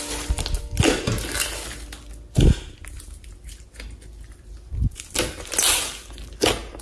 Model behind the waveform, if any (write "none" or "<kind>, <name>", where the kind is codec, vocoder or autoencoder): none